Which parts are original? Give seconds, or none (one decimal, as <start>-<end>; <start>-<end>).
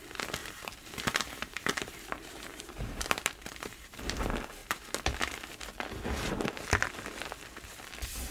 0.0-0.4; 4.0-8.3